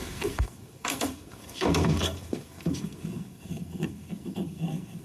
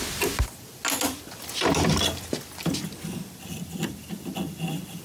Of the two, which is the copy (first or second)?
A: first